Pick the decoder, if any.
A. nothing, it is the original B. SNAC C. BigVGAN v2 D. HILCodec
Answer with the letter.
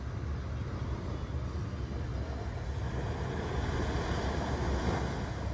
A